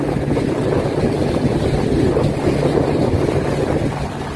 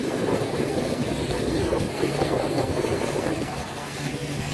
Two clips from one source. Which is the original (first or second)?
first